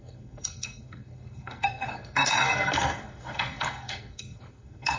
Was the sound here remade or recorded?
remade